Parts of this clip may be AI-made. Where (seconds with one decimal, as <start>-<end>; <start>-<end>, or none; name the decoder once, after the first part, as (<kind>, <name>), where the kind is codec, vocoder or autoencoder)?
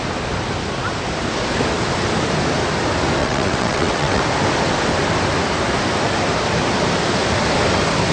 3.2-4.2 (vocoder, WaveNeXt)